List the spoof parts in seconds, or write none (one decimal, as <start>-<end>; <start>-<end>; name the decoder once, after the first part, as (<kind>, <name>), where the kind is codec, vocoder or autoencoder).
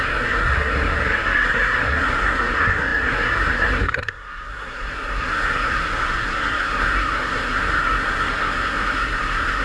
0.0-9.6 (codec, SNAC)